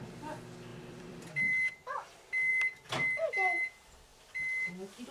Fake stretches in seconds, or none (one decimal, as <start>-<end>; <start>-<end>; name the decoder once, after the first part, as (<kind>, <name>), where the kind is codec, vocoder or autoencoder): 0.7-2.1 (vocoder, BigVGAN v2); 2.5-3.3